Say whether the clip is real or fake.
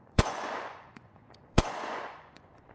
fake